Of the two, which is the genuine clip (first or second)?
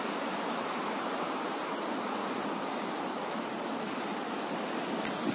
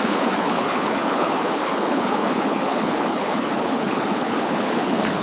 first